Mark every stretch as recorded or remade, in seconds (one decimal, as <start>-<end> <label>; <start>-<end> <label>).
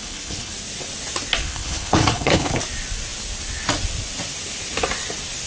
0.0-0.5 remade; 0.5-1.4 recorded; 1.4-2.6 remade; 2.6-5.5 recorded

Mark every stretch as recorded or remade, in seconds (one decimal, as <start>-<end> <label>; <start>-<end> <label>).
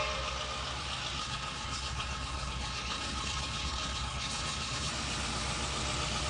0.0-1.2 recorded; 1.2-4.9 remade; 4.9-6.3 recorded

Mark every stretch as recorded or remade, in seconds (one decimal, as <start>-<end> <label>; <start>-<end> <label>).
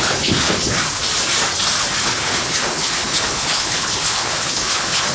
0.0-1.0 remade; 1.0-2.0 recorded; 2.0-5.1 remade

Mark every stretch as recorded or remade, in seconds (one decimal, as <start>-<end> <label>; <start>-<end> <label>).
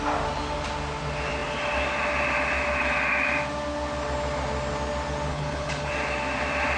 0.0-5.3 recorded; 5.3-5.9 remade; 5.9-6.8 recorded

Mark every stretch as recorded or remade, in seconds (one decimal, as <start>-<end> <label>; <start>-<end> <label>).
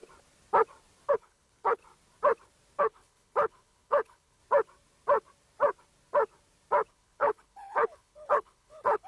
0.0-1.1 recorded; 1.1-1.8 remade; 1.8-2.8 recorded; 2.8-4.4 remade; 4.4-6.9 recorded; 6.9-9.1 remade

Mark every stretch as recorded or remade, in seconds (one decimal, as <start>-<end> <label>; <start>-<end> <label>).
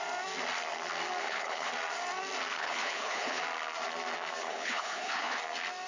0.0-1.2 recorded; 1.2-1.7 remade; 1.7-2.5 recorded; 2.5-3.4 remade; 3.4-4.4 recorded; 4.4-5.4 remade; 5.4-5.9 recorded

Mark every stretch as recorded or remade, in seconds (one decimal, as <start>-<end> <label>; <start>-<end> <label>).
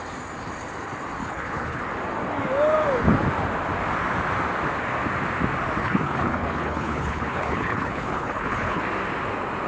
0.0-1.2 recorded; 1.2-1.8 remade; 1.8-5.8 recorded; 5.8-8.8 remade; 8.8-9.7 recorded